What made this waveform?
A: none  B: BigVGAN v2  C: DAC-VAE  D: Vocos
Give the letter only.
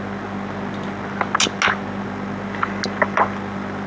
A